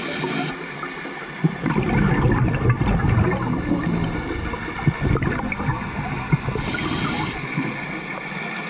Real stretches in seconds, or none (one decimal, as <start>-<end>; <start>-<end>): 0.0-8.7